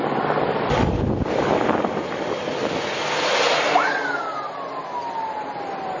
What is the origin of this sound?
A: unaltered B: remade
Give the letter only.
A